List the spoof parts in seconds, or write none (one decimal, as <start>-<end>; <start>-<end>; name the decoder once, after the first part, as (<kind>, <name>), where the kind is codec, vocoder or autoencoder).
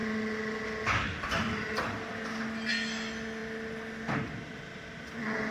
none